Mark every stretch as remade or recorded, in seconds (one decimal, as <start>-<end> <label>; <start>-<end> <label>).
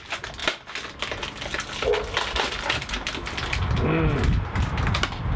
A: 0.0-5.4 recorded